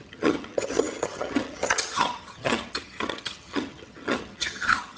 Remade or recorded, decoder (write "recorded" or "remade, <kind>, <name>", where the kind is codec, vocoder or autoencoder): remade, vocoder, HiFi-GAN